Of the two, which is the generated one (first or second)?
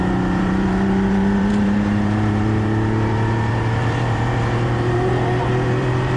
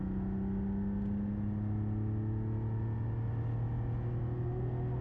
first